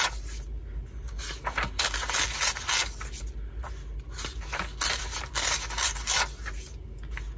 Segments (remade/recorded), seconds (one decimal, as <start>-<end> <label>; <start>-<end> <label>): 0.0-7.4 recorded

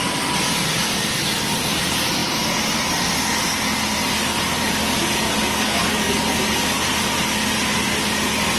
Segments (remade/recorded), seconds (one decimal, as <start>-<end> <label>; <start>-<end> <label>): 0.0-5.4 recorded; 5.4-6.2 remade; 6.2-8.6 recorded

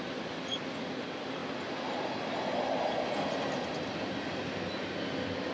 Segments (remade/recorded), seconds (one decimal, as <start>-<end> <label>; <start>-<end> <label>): 0.0-5.5 recorded

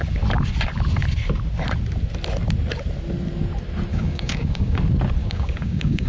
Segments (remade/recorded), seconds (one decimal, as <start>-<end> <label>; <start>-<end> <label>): 0.0-3.9 recorded; 3.9-4.8 remade; 4.8-5.2 recorded; 5.2-6.1 remade

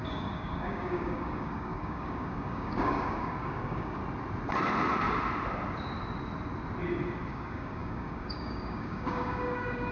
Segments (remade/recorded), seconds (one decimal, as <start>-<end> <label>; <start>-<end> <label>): 0.0-4.0 remade; 4.0-7.3 recorded; 7.3-9.9 remade

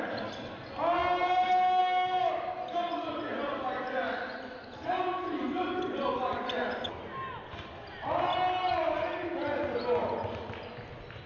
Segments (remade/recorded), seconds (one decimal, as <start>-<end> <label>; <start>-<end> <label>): 0.0-11.3 recorded